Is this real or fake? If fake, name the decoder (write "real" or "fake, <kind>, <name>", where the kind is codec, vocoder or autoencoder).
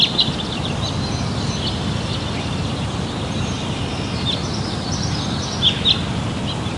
real